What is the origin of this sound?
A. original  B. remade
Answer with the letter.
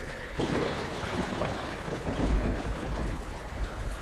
B